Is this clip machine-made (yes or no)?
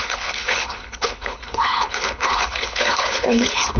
yes